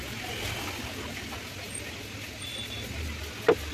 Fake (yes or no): no